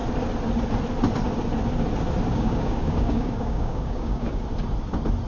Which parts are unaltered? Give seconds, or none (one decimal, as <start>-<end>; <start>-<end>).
0.0-2.3; 4.4-5.3